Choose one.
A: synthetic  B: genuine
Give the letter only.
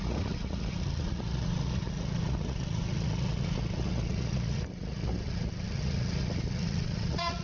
A